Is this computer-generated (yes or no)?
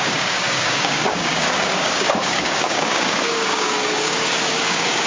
yes